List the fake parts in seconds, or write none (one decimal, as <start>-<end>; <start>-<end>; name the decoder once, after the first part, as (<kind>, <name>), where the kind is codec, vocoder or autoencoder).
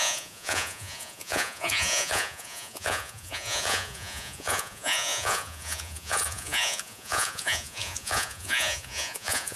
0.0-9.6 (vocoder, Vocos)